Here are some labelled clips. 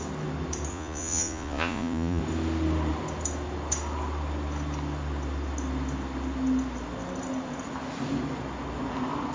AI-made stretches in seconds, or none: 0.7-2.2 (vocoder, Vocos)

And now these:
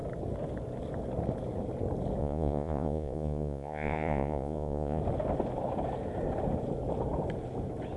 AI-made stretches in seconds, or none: 2.2-5.0 (vocoder, Vocos)